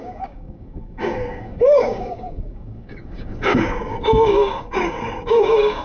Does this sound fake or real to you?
fake